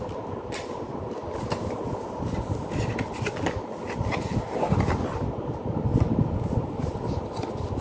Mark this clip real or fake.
real